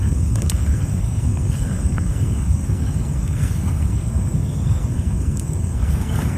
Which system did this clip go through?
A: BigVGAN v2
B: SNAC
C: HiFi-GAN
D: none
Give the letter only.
B